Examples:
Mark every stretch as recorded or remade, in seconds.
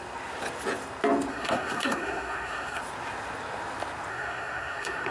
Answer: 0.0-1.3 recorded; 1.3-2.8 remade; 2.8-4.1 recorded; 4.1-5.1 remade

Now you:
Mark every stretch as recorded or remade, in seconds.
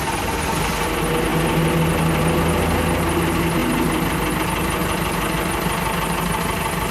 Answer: 0.0-6.9 recorded